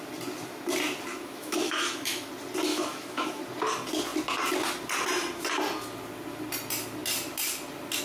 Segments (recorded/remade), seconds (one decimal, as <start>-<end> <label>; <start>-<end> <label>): 0.0-1.1 recorded; 1.1-2.3 remade; 2.3-2.7 recorded; 2.7-3.4 remade; 3.4-8.0 recorded